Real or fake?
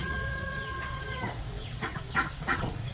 fake